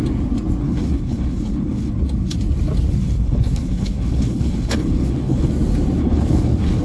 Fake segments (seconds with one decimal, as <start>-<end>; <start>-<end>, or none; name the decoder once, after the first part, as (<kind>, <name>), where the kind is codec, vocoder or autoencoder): 0.6-1.9 (codec, HILCodec); 3.0-5.5; 6.0-6.8

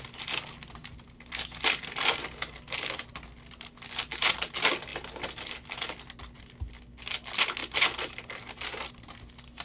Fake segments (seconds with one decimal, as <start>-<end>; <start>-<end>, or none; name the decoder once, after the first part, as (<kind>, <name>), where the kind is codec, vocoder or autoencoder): 7.6-8.9 (vocoder, BigVGAN v2)

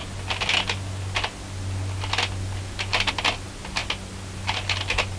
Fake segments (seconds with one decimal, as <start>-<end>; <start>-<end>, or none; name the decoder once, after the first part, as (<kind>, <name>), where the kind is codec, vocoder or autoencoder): none

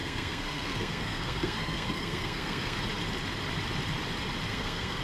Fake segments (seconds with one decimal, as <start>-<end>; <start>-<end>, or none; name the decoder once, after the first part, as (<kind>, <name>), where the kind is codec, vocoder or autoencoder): 0.0-2.8 (codec, SNAC); 4.5-5.0

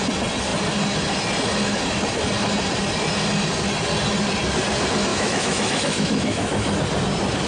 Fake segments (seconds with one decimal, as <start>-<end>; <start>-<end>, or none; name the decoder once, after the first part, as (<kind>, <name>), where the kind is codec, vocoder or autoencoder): 5.1-6.7 (autoencoder, DAC-VAE)

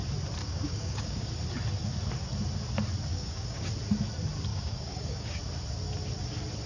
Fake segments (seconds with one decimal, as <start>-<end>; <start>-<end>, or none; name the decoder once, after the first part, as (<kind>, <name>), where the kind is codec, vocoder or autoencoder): 0.4-1.3 (codec, DAC); 3.1-3.7; 4.5-5.4

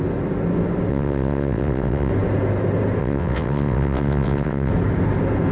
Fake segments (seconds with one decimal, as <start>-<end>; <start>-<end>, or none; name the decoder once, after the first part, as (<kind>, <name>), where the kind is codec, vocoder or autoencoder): 0.9-2.1 (vocoder, WaveNeXt); 3.0-4.7